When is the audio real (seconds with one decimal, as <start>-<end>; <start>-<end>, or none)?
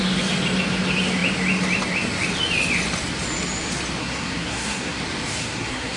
0.0-4.0; 5.0-5.4